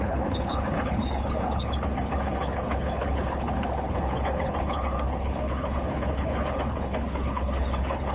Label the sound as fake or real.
fake